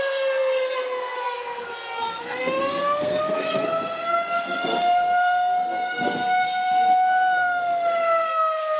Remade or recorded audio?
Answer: remade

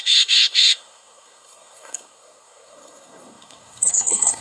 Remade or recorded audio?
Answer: remade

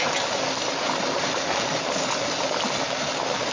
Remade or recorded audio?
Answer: recorded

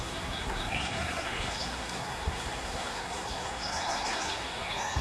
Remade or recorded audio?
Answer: remade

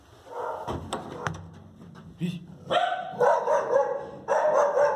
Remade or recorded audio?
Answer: recorded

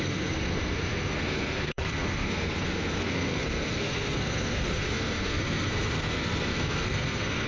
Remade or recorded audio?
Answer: remade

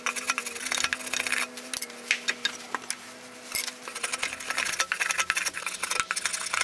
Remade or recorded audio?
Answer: recorded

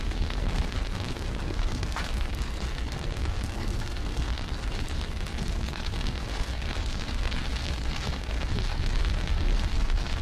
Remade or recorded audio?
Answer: remade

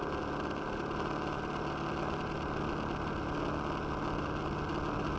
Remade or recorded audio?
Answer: recorded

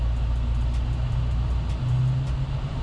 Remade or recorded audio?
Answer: recorded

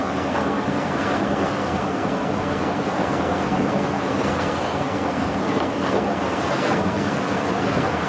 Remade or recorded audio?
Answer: remade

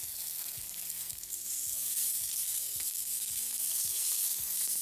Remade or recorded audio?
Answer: remade